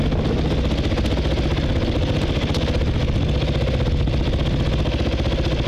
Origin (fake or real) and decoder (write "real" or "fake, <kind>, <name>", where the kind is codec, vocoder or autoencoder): real